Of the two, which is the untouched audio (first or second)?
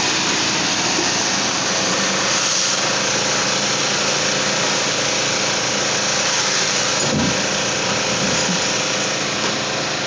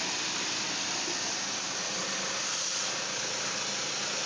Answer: first